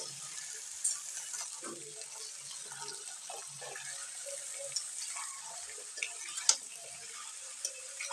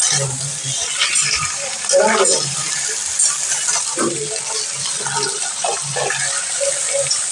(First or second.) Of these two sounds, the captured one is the first